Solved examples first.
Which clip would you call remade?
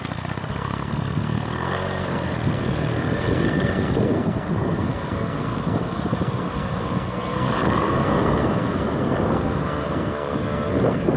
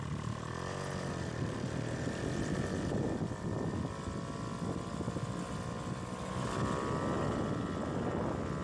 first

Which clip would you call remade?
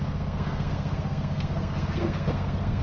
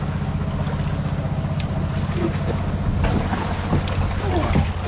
first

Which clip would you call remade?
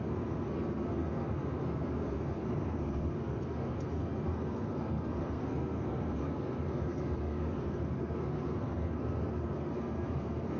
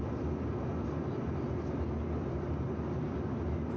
first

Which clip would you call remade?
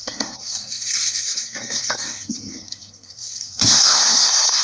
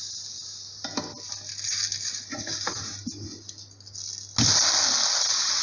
first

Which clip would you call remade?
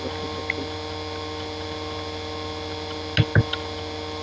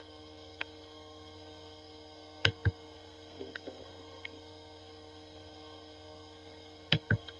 second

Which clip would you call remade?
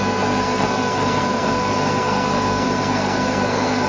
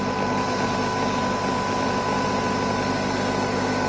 first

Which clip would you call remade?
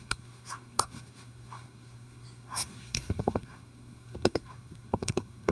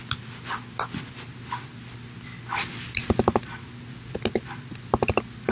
first